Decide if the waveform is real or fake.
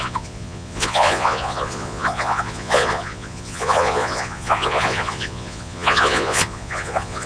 fake